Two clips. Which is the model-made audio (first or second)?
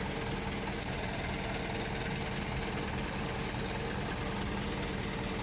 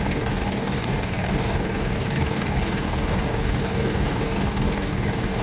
second